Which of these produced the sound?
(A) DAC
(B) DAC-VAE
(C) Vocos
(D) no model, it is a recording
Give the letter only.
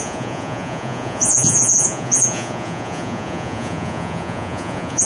C